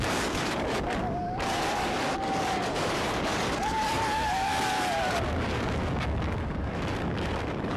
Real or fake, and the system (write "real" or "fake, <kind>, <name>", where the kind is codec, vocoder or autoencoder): fake, codec, DAC